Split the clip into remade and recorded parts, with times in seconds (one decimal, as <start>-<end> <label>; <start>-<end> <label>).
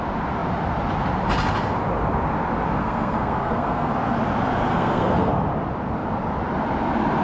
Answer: 0.0-2.8 recorded; 2.8-3.9 remade; 3.9-4.7 recorded; 4.7-5.3 remade; 5.3-7.2 recorded